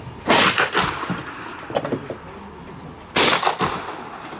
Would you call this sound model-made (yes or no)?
no